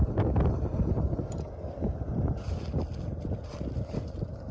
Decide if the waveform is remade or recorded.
recorded